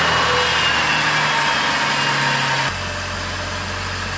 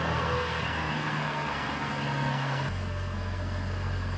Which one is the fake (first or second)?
second